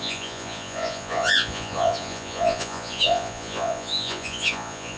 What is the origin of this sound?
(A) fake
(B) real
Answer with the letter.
A